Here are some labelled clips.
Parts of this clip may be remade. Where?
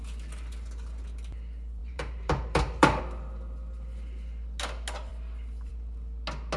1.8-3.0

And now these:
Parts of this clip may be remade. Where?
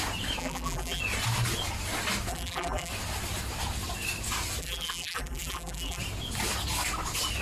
0.4-1.0; 2.3-2.9; 4.6-6.0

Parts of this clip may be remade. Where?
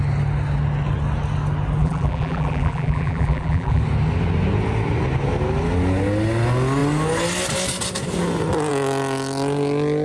1.8-3.8